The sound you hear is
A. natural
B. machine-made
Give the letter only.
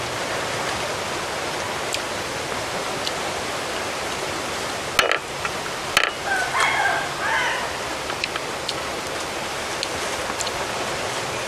A